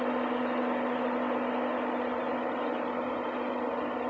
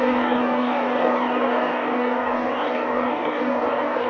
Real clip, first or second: first